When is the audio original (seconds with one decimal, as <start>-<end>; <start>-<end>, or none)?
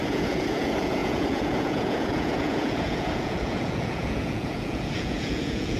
none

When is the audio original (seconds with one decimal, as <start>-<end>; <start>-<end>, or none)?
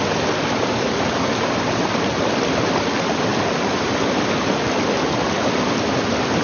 0.0-6.4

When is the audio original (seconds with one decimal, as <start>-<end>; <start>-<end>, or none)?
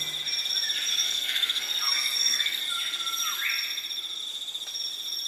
0.0-0.9; 2.6-5.3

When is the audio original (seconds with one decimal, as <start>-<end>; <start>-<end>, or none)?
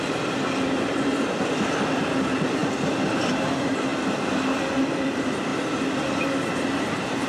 2.6-3.2; 3.9-4.6; 5.5-6.2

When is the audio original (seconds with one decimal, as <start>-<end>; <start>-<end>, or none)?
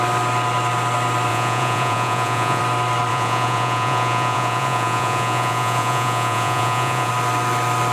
0.0-1.3; 2.6-3.1; 7.1-7.9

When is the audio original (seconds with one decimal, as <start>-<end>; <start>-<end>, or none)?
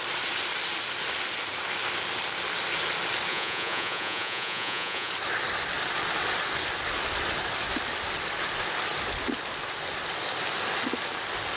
0.0-3.3; 5.1-11.6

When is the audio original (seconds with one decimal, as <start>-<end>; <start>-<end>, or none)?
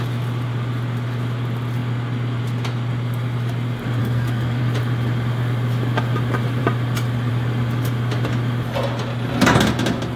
0.0-4.0; 4.6-10.2